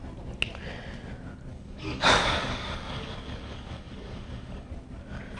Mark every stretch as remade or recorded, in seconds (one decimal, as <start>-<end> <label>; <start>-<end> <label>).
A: 0.0-1.5 recorded; 1.5-4.7 remade; 4.7-5.4 recorded